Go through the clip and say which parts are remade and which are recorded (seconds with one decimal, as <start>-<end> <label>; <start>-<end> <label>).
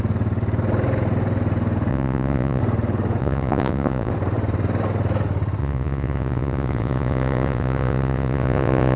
0.0-1.9 recorded; 1.9-2.6 remade; 2.6-3.2 recorded; 3.2-4.1 remade; 4.1-5.6 recorded; 5.6-9.0 remade